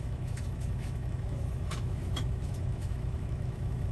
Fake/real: fake